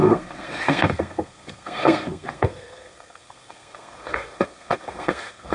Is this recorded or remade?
remade